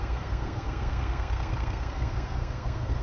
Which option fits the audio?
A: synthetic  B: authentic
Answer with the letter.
A